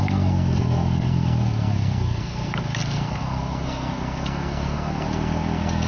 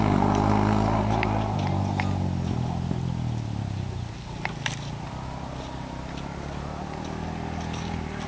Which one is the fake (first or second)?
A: first